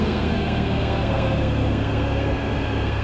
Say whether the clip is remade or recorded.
remade